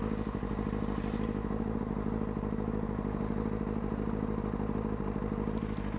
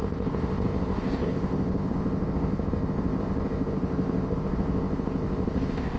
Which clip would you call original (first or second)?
first